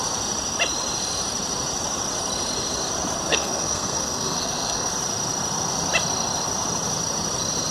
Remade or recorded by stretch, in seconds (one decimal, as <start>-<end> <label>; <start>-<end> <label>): 0.0-3.3 recorded; 3.3-4.9 remade; 4.9-7.7 recorded